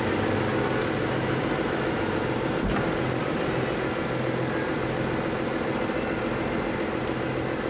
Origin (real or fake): real